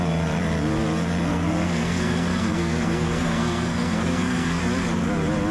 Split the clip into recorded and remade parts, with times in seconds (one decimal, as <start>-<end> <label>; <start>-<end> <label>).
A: 0.0-1.3 recorded; 1.3-4.6 remade; 4.6-5.5 recorded